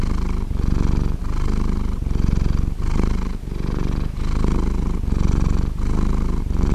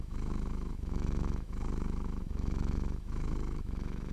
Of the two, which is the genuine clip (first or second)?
first